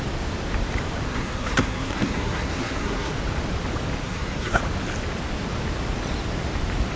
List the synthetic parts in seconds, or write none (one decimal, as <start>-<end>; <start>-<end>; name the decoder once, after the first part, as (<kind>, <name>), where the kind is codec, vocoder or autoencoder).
1.1-3.1 (codec, SNAC); 4.0-4.6